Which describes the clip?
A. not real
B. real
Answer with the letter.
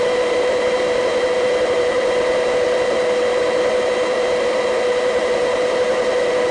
A